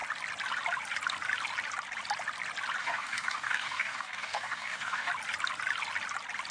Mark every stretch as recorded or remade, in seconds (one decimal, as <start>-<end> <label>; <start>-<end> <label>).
0.0-2.8 recorded; 2.8-5.1 remade; 5.1-6.5 recorded